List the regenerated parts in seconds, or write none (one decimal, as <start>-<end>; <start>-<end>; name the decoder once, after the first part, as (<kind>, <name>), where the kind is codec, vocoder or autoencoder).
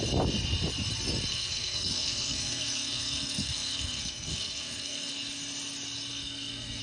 1.3-5.1 (codec, SNAC); 6.1-6.8